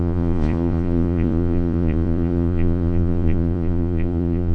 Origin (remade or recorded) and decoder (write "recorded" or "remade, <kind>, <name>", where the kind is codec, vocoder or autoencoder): remade, vocoder, Vocos